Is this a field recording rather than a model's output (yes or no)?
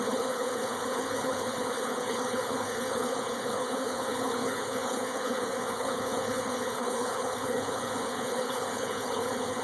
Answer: no